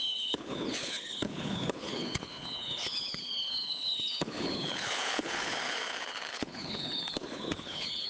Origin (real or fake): fake